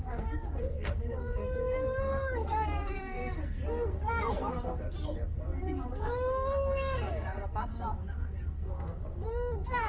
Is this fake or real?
fake